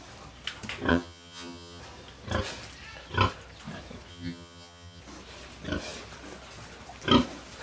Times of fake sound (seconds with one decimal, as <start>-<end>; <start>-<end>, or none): 0.9-1.8; 4.1-5.0